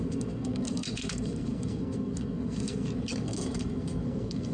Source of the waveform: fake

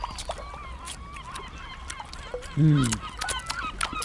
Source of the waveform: real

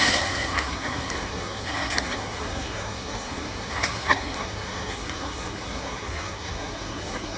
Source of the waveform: fake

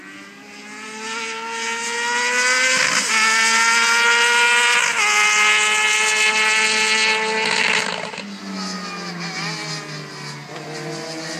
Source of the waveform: real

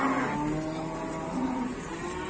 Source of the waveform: real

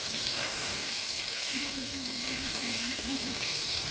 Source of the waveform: fake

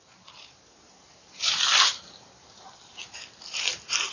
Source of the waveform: fake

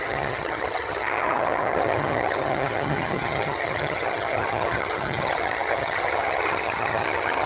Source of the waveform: fake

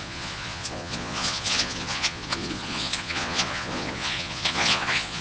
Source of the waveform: fake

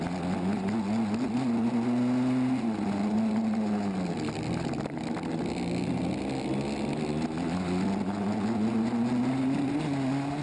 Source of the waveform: real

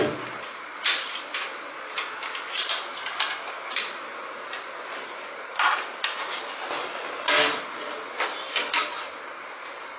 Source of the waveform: real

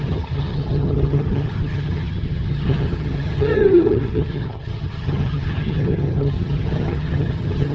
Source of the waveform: fake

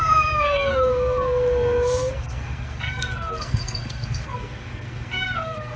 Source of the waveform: fake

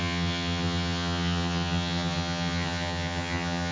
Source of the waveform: fake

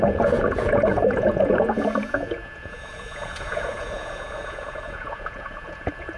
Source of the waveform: fake